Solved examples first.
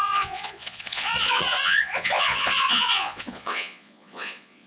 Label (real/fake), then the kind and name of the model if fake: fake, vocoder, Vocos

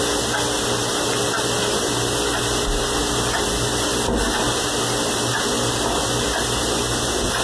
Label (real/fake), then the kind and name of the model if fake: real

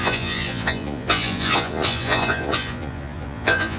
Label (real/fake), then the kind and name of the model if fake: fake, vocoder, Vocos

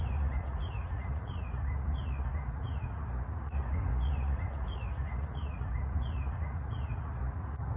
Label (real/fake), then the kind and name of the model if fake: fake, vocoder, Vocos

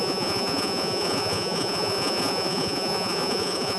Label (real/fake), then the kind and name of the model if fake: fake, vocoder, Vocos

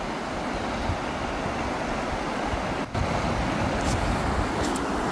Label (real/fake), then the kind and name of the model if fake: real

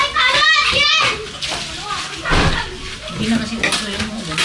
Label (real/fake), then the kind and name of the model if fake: real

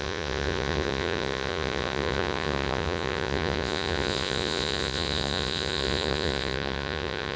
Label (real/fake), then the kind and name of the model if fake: fake, vocoder, Vocos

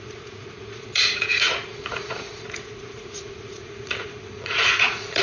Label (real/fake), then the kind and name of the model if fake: fake, vocoder, Vocos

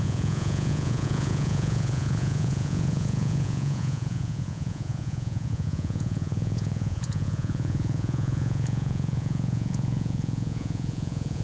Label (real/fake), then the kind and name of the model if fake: fake, vocoder, Vocos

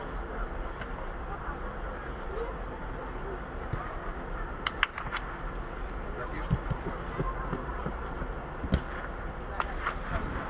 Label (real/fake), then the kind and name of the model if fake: real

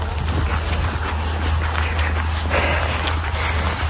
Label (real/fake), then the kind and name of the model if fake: real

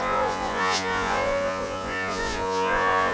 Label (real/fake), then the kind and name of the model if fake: fake, vocoder, Vocos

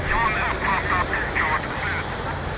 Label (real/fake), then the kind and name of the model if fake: real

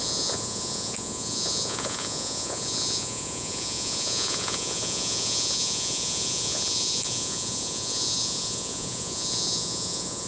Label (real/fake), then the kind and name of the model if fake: fake, vocoder, Vocos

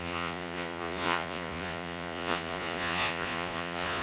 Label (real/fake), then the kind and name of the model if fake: fake, vocoder, Vocos